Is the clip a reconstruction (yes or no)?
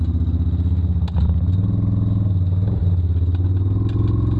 no